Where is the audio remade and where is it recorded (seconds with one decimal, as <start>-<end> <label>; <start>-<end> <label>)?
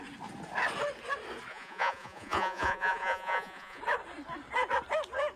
0.0-1.5 recorded; 1.5-3.8 remade; 3.8-5.4 recorded